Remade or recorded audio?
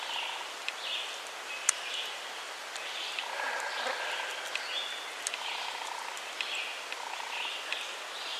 recorded